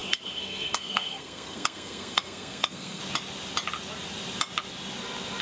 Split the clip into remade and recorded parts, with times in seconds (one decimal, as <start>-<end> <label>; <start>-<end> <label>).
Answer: 0.0-3.0 remade; 3.0-5.4 recorded